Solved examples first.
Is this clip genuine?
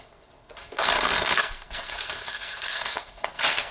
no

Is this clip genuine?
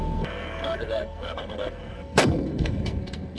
no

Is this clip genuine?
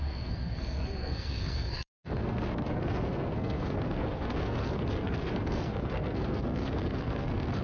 no